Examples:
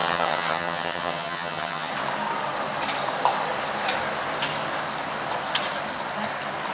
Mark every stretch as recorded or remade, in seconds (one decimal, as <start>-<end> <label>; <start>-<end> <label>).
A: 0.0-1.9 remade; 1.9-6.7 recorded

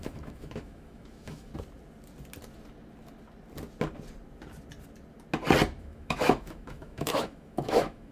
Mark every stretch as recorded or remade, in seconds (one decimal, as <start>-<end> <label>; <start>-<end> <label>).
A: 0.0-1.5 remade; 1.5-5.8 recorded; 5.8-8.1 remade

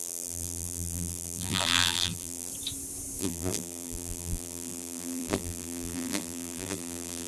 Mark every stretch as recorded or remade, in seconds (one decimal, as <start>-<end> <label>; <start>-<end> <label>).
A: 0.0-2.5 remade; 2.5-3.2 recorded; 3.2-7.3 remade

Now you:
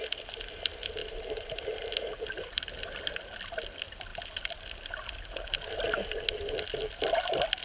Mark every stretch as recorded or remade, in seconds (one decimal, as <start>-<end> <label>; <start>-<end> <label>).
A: 0.0-1.0 recorded; 1.0-1.9 remade; 1.9-2.4 recorded; 2.4-3.2 remade; 3.2-7.6 recorded